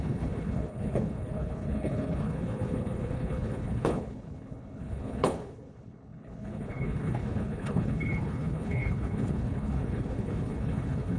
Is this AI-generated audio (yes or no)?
yes